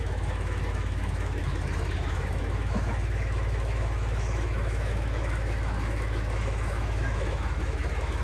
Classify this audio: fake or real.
fake